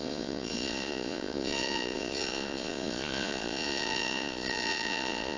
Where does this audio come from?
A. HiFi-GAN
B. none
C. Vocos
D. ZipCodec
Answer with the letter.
C